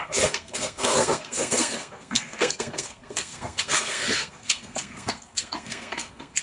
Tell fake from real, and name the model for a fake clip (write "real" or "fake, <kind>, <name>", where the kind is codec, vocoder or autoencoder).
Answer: fake, codec, SNAC